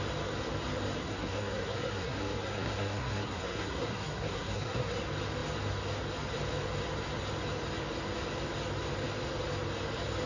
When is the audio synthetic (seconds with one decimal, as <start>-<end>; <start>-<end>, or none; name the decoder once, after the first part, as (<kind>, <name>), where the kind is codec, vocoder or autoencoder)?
1.0-5.0 (codec, SNAC)